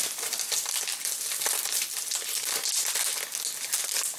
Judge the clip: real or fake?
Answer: real